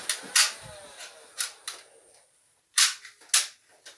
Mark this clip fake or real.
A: real